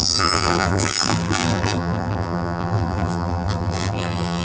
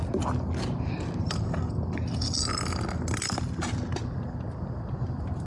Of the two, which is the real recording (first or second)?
second